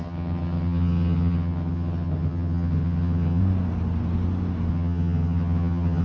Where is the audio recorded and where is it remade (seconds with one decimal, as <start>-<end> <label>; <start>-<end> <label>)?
0.0-3.4 remade; 3.4-4.7 recorded; 4.7-6.0 remade